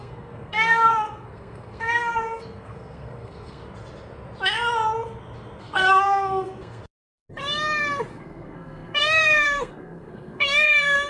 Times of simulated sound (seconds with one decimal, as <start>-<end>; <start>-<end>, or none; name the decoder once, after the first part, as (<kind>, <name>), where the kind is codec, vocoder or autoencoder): 0.0-3.6 (codec, SNAC); 5.6-6.8; 8.1-11.1